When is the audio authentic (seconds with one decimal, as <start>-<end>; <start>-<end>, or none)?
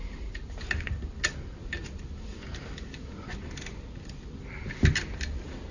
0.0-5.7